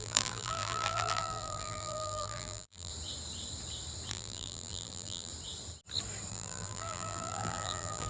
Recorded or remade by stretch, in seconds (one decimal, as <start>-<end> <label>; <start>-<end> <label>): 0.0-2.9 remade; 2.9-4.1 recorded; 4.1-5.3 remade; 5.3-6.3 recorded; 6.3-8.1 remade